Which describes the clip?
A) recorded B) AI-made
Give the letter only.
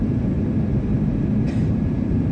B